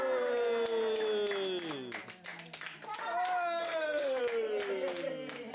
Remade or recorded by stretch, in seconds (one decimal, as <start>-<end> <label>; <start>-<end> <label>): 0.0-3.6 recorded; 3.6-4.2 remade; 4.2-5.5 recorded